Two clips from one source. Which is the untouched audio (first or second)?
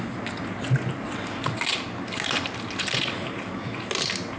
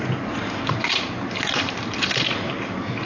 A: first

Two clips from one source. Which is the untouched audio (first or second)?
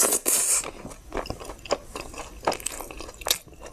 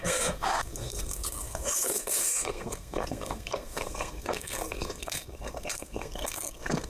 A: first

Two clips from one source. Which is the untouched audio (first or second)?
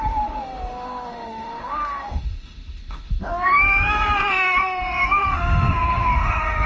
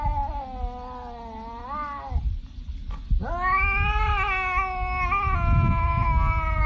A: second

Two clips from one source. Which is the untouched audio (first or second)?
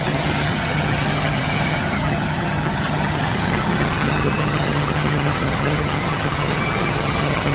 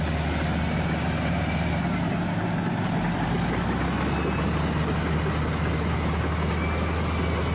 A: second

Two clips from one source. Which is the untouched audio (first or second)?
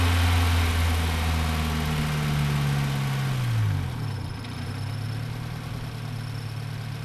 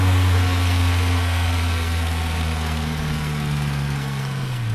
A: first